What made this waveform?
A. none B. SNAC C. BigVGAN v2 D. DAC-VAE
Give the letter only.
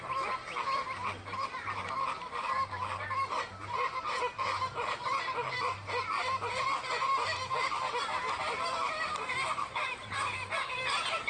C